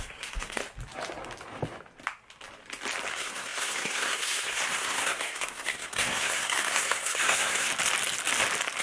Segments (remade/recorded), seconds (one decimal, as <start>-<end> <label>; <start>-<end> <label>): 0.0-0.6 remade; 0.6-3.1 recorded; 3.1-7.7 remade; 7.7-8.8 recorded